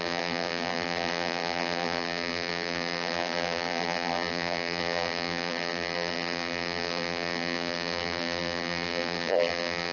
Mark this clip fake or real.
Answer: fake